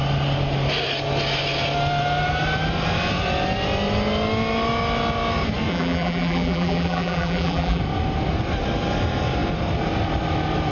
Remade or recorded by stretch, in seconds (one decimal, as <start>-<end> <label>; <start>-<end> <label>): 0.0-5.7 recorded; 5.7-7.8 remade; 7.8-10.7 recorded